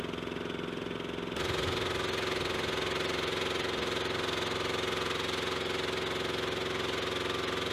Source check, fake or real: real